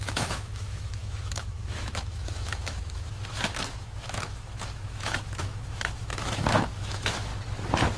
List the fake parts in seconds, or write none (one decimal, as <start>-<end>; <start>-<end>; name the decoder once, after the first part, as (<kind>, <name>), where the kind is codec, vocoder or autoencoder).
0.0-7.3 (autoencoder, DAC-VAE)